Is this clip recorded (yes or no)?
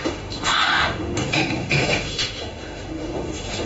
no